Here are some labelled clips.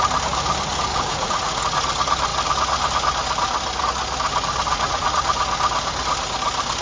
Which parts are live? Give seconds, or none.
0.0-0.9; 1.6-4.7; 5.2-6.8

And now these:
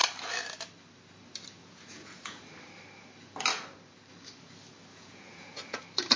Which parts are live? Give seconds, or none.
0.0-1.6; 2.4-4.9; 5.8-6.2

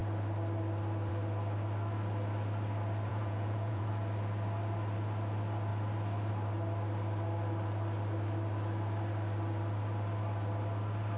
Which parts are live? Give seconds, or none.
0.0-3.1; 3.9-11.2

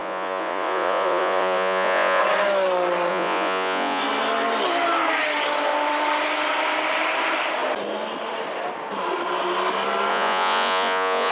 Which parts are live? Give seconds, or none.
2.2-3.1; 4.0-10.1

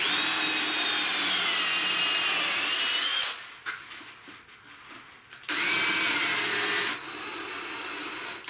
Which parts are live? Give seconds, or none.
0.0-8.5

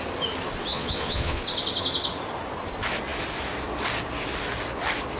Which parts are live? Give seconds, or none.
0.0-0.7; 1.4-5.2